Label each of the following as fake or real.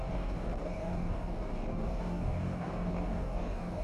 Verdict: fake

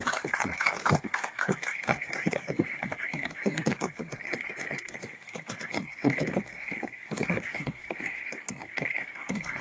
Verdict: fake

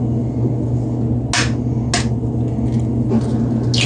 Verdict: real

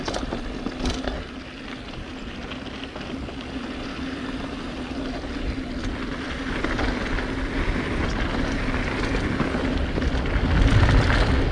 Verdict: real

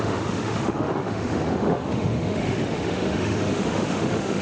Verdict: fake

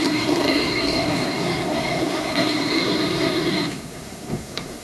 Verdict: fake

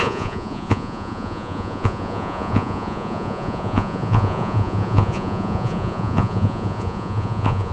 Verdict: fake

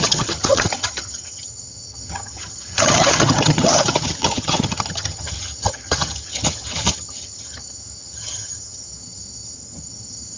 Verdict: fake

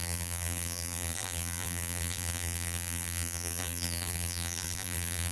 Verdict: fake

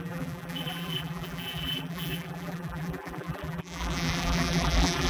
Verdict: fake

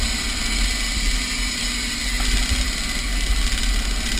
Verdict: real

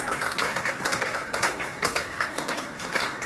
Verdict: fake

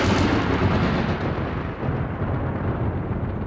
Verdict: real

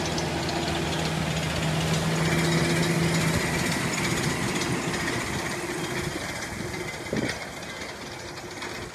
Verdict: real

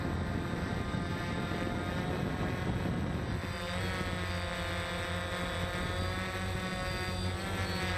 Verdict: real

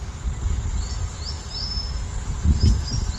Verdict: real